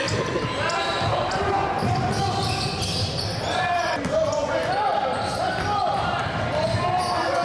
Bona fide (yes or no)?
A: yes